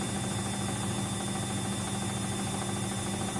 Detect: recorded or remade recorded